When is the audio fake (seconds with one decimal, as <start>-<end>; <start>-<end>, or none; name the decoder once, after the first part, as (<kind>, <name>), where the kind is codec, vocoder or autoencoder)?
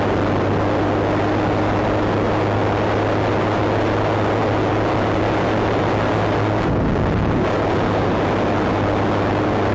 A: none